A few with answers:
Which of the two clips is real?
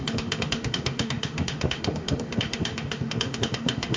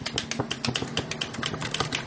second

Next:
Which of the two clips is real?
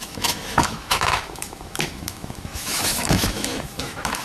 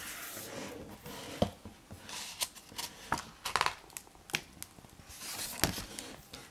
second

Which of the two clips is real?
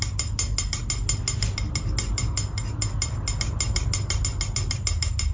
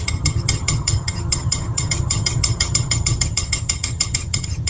first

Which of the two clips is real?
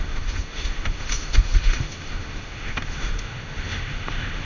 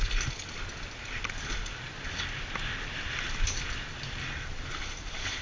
second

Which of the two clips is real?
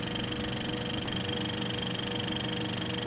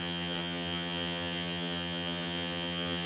first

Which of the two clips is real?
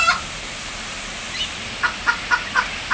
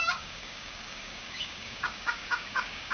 first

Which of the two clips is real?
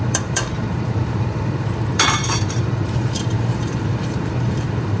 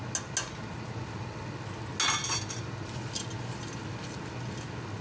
second